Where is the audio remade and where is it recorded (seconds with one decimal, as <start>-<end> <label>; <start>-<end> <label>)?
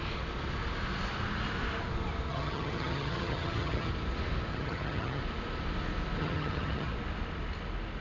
0.0-2.3 recorded; 2.3-3.9 remade; 3.9-4.5 recorded; 4.5-5.2 remade; 5.2-6.2 recorded; 6.2-6.9 remade; 6.9-8.0 recorded